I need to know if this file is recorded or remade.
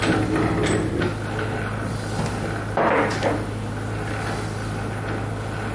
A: recorded